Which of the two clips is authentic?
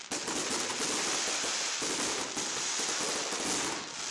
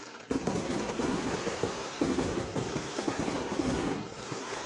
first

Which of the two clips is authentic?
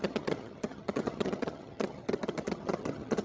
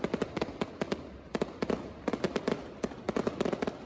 second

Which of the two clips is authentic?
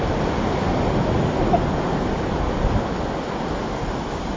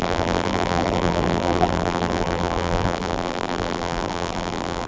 first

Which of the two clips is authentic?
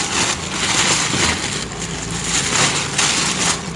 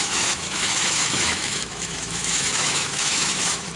first